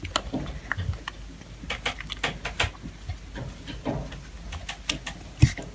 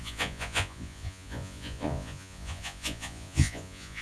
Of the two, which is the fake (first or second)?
second